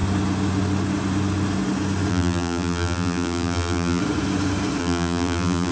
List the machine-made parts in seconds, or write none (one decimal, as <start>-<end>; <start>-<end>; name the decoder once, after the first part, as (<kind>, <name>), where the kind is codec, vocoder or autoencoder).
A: 2.1-4.0 (vocoder, BigVGAN v2); 4.8-5.7